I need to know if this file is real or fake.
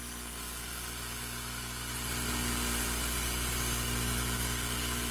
real